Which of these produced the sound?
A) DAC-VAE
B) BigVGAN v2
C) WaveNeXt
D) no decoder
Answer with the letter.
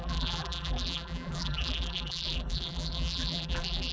B